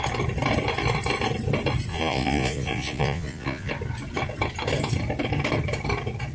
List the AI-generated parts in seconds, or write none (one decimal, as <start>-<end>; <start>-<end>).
1.9-3.7